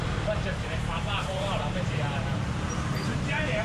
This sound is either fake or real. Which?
fake